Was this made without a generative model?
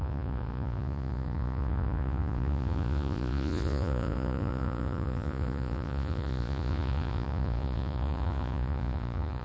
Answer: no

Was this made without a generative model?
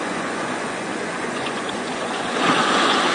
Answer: no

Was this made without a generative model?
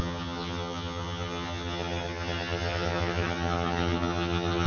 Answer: no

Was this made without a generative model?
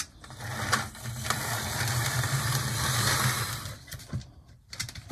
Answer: no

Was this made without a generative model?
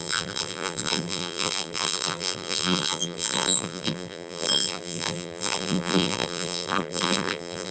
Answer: no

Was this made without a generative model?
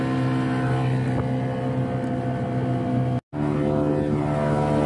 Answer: yes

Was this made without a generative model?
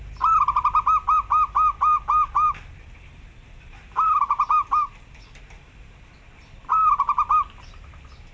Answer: no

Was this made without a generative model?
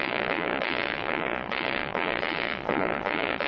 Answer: no